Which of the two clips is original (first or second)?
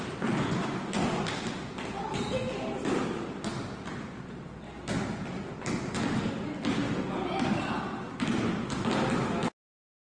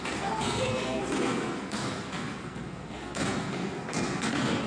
first